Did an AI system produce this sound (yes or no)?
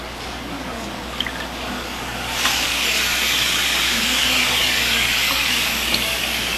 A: yes